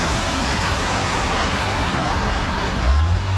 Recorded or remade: remade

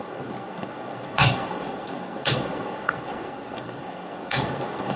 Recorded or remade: remade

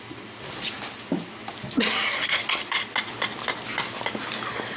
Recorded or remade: recorded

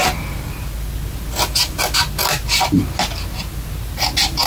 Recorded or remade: recorded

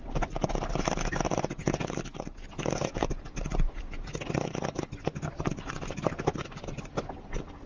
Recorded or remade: recorded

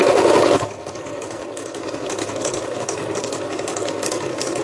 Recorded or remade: remade